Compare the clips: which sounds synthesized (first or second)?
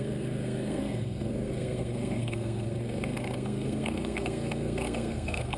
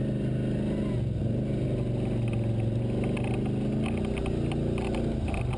first